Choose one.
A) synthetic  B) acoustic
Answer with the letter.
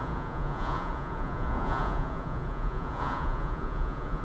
A